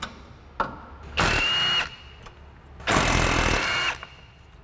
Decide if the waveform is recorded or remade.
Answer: recorded